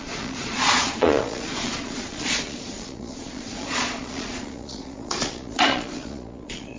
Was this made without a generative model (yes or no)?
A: no